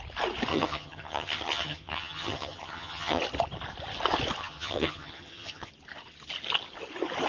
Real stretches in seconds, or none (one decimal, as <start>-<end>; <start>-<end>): 0.0-0.5; 3.2-4.4; 5.7-7.3

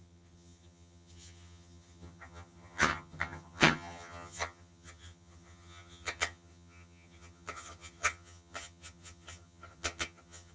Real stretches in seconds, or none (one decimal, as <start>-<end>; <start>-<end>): none

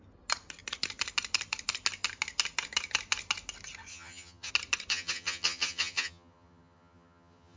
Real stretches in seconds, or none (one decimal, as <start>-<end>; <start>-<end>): 0.0-3.9; 4.5-4.9

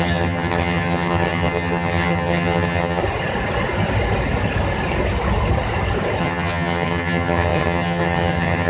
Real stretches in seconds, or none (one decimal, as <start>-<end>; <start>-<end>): 3.0-6.2

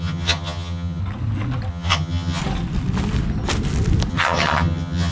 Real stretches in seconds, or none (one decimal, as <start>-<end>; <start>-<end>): 1.0-1.7; 2.4-4.1